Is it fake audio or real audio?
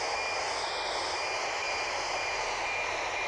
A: real